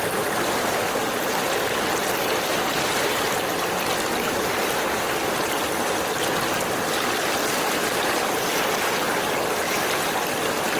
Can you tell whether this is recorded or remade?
recorded